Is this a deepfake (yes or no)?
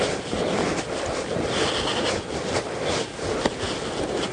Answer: no